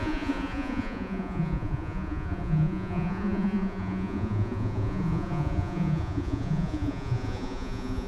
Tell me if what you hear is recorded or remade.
remade